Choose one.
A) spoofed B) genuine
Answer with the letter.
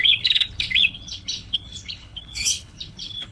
A